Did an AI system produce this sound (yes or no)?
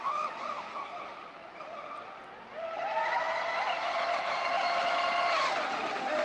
no